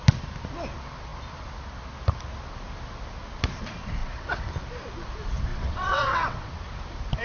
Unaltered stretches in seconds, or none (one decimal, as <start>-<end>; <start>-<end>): 0.0-4.0; 4.5-5.5; 6.5-7.2